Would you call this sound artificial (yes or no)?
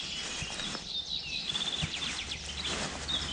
no